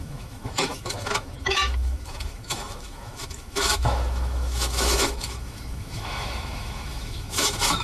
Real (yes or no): no